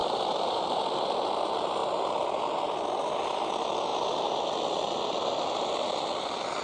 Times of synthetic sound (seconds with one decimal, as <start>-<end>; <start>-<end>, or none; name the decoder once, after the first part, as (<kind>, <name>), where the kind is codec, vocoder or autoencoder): 0.0-0.8 (vocoder, BigVGAN v2)